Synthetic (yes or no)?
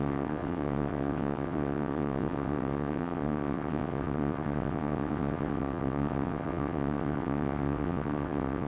yes